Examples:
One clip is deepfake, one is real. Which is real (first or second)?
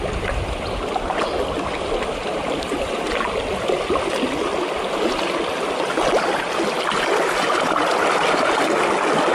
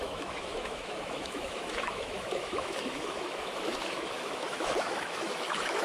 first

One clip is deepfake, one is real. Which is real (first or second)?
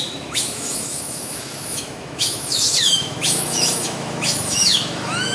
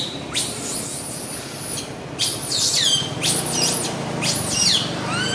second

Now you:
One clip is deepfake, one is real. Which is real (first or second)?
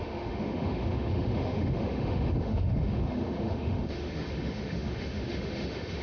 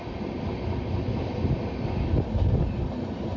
second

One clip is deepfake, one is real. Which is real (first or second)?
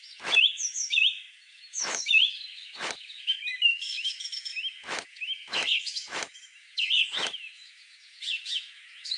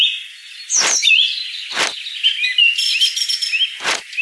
second